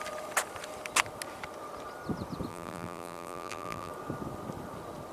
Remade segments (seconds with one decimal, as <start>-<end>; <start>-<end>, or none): 2.5-3.9